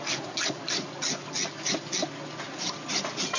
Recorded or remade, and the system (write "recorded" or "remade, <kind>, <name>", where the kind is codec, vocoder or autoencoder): recorded